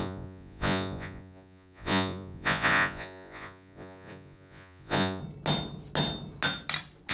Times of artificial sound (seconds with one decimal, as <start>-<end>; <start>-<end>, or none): 0.0-5.2